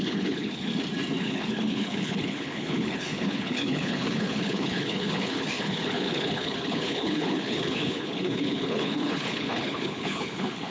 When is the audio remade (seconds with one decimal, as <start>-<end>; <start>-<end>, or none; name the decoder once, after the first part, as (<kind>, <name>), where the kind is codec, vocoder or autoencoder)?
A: 0.0-0.7 (codec, HILCodec); 1.2-10.7